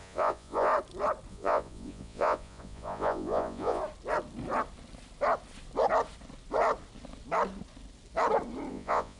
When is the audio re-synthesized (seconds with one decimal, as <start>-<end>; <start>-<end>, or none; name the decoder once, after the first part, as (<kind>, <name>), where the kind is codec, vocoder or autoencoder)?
0.0-0.7 (vocoder, Vocos); 1.3-3.8; 8.7-9.2